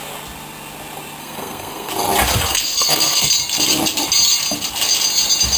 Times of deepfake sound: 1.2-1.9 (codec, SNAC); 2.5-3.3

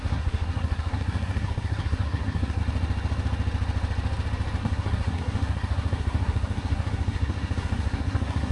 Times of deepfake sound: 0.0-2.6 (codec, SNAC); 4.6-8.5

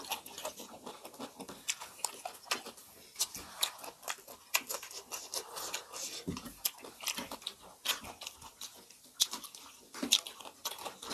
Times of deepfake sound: none